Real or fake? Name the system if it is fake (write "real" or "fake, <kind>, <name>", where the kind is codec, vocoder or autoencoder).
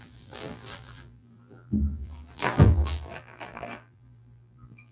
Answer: fake, vocoder, BigVGAN v2